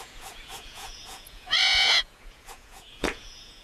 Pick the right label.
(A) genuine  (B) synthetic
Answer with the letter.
B